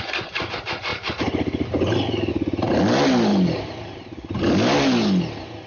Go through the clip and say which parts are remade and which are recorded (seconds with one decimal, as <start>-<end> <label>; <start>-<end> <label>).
0.0-5.7 recorded